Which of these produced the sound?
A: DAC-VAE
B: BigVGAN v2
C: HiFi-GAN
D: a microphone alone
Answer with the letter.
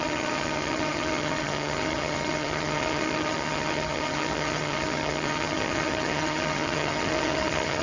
C